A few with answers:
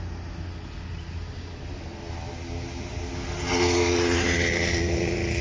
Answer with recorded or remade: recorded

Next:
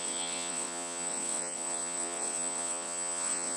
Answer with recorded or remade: remade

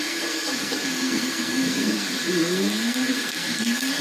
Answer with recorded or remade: remade